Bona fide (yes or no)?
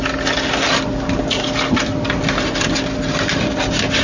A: yes